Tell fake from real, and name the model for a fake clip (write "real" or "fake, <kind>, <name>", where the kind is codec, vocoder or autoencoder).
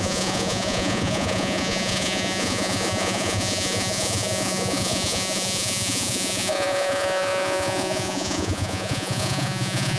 fake, vocoder, Vocos